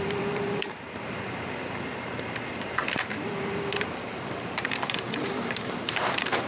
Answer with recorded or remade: remade